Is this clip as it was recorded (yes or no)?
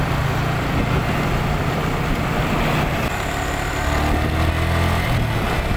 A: yes